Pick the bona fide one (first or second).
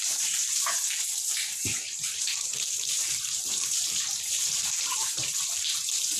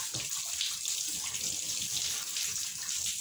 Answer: second